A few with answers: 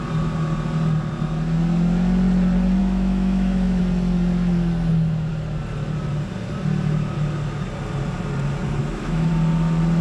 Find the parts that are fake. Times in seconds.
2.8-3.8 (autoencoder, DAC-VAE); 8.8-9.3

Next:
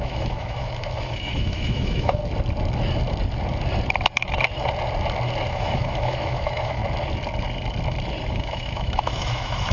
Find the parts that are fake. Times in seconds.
0.0-2.2 (autoencoder, DAC-VAE); 5.5-6.8; 8.3-9.7

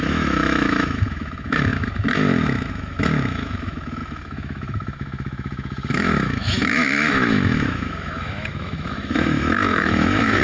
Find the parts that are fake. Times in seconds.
0.0-10.4 (autoencoder, DAC-VAE)

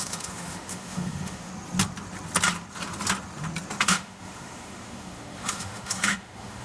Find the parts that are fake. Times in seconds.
0.0-1.5 (autoencoder, DAC-VAE); 3.8-6.6

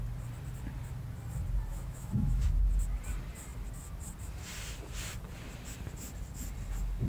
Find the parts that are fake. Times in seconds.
1.7-2.4 (autoencoder, DAC-VAE)

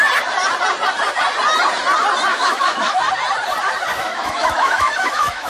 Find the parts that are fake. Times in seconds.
2.3-3.0 (autoencoder, DAC-VAE); 3.9-5.5

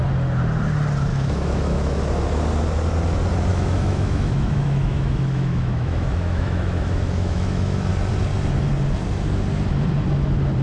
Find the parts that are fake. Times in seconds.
1.1-2.0 (autoencoder, DAC-VAE); 3.5-7.9